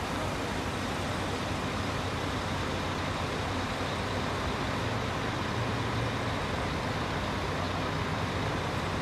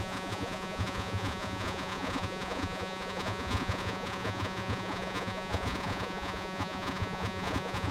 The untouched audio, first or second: first